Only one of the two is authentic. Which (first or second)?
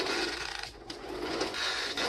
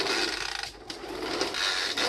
second